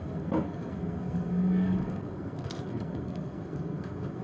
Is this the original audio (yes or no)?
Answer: no